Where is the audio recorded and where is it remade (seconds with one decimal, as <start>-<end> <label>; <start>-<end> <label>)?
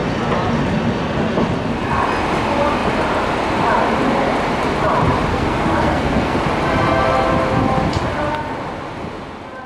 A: 0.0-5.3 recorded; 5.3-6.4 remade; 6.4-9.7 recorded